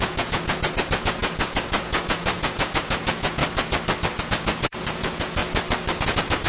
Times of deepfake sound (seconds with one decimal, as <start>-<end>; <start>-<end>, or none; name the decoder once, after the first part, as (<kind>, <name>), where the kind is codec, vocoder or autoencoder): 0.0-3.4 (vocoder, Vocos); 4.2-5.4; 6.0-6.5